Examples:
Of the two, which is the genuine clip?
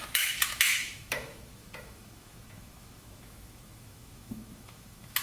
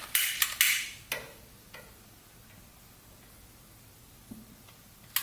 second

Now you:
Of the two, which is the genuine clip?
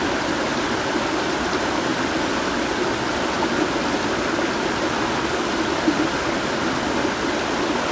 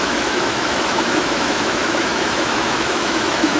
first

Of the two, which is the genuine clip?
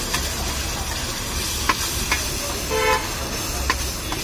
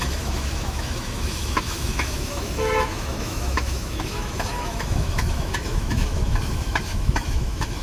first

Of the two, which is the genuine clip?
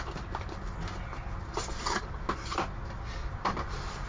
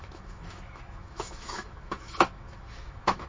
first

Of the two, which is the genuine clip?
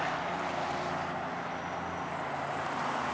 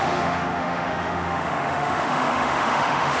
first